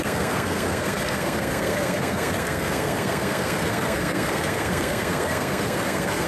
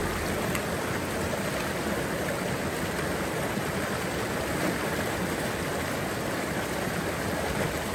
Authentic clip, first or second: second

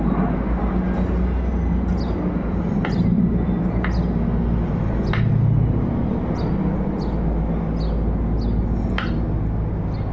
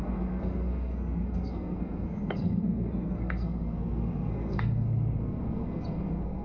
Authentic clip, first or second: first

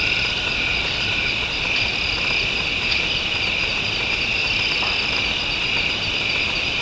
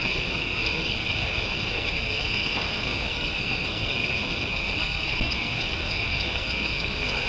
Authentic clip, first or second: first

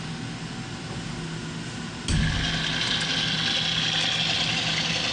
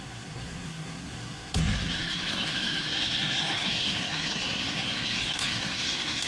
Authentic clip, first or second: first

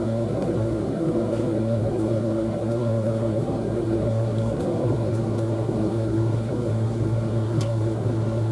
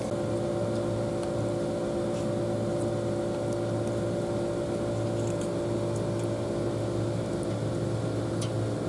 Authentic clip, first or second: second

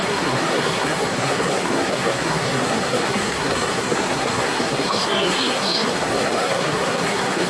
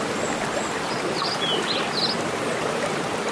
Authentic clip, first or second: second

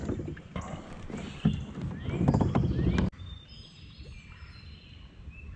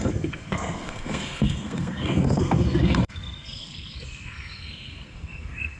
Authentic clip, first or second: first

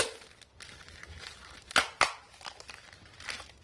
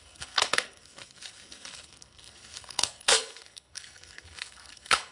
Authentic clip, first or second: first